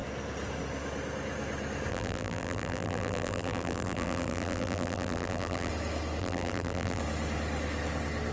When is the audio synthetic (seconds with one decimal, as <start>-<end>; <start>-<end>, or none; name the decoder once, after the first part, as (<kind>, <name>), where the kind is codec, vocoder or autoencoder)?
1.9-5.7 (vocoder, BigVGAN v2); 6.2-7.0